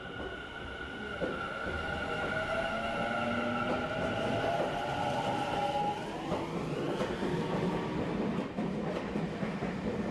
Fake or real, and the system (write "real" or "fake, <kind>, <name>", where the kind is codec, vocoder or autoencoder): real